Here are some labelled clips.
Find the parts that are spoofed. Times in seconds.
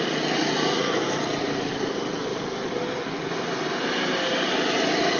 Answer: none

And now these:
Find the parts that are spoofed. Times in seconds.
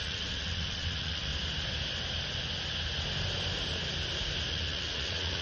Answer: 0.0-1.3 (vocoder, Vocos); 4.5-5.4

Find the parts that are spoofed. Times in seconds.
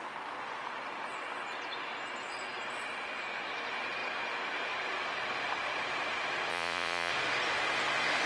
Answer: 6.5-7.1 (vocoder, Vocos)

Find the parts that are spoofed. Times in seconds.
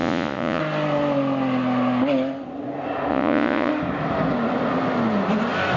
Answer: 0.0-0.6 (vocoder, Vocos); 3.1-3.7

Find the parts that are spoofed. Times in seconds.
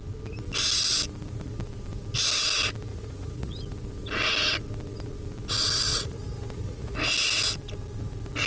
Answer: 2.9-3.5 (vocoder, Vocos); 5.9-7.1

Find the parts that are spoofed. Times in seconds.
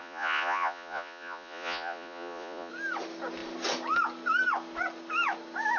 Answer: 0.0-2.7 (vocoder, Vocos)